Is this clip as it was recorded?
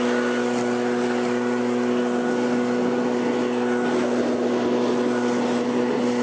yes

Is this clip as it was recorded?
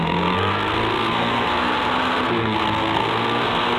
no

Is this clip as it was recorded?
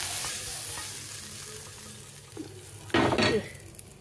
yes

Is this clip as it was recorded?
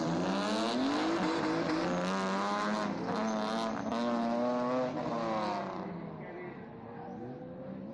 yes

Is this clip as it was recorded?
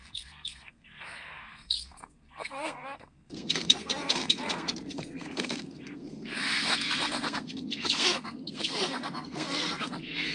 no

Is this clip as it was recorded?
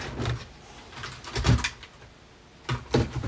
yes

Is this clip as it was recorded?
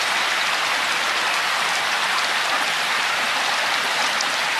yes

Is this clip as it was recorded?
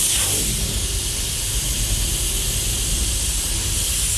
yes